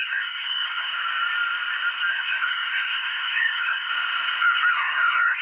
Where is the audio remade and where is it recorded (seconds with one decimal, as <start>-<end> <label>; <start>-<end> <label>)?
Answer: 0.0-0.9 remade; 0.9-2.1 recorded; 2.1-3.9 remade; 3.9-4.7 recorded; 4.7-5.4 remade